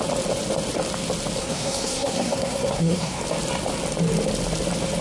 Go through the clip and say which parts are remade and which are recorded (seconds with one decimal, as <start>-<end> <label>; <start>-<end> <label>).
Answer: 0.0-1.4 recorded; 1.4-3.2 remade; 3.2-5.0 recorded